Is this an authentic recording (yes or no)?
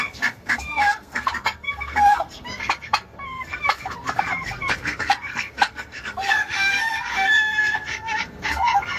no